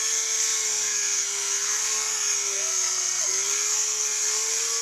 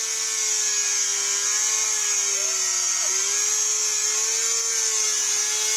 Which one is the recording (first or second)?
second